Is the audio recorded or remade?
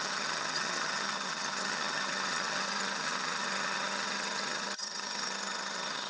remade